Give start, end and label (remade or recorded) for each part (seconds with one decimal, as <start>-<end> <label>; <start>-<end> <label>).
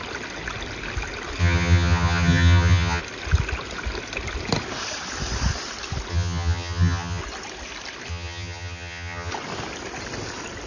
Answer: 0.0-1.4 recorded; 1.4-3.0 remade; 3.0-6.1 recorded; 6.1-7.2 remade; 7.2-8.1 recorded; 8.1-9.3 remade; 9.3-10.7 recorded